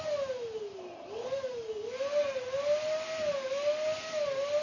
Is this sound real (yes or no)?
yes